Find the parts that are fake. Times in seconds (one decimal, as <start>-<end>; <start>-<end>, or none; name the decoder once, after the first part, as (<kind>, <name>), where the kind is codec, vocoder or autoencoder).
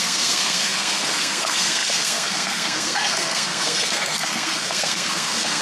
0.0-5.6 (codec, SNAC)